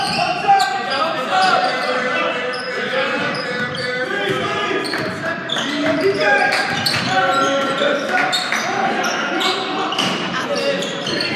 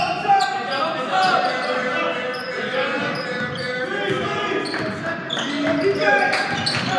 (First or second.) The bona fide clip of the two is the second